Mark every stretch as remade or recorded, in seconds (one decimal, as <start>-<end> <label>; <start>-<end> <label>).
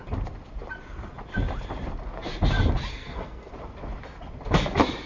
0.0-2.9 recorded; 2.9-3.5 remade; 3.5-5.1 recorded